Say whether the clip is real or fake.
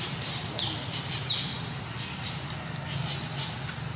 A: real